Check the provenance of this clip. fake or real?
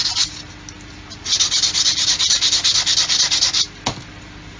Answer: real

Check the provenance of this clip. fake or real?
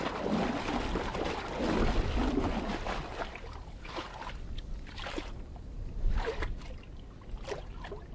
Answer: real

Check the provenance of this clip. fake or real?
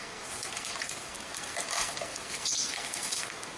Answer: fake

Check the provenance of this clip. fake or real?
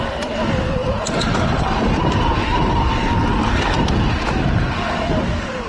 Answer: real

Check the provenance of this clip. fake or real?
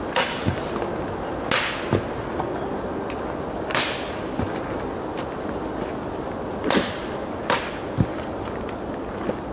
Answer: real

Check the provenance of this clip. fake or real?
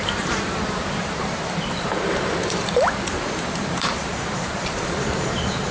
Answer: fake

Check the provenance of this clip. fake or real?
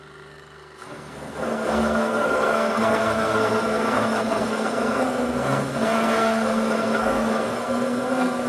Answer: fake